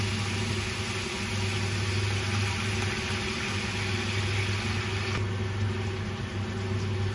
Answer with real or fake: real